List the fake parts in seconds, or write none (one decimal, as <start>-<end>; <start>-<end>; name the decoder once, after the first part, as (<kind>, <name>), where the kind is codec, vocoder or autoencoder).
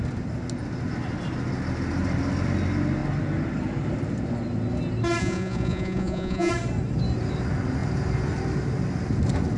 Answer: 5.2-6.5 (vocoder, Vocos)